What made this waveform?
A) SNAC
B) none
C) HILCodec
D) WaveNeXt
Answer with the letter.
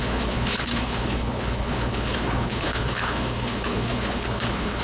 C